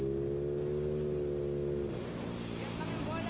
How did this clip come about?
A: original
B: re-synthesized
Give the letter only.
A